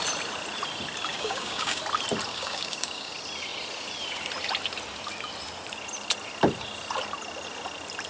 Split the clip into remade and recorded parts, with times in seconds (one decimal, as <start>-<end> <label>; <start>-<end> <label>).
0.0-1.1 recorded; 1.1-1.8 remade; 1.8-2.3 recorded; 2.3-3.1 remade; 3.1-8.1 recorded